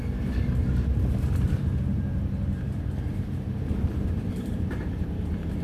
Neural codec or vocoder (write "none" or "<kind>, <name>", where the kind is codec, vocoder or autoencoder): vocoder, BigVGAN v2